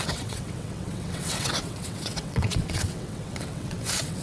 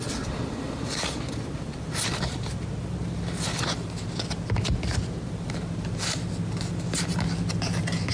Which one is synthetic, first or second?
first